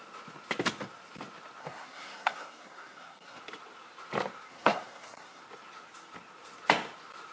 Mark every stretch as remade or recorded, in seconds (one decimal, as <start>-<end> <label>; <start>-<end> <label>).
0.0-1.6 recorded; 1.6-3.4 remade; 3.4-4.5 recorded; 4.5-5.4 remade; 5.4-7.3 recorded